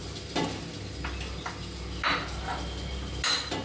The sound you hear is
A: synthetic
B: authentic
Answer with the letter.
B